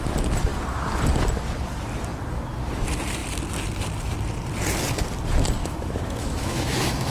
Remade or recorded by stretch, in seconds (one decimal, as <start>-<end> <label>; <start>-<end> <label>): 0.0-5.6 recorded; 5.6-7.1 remade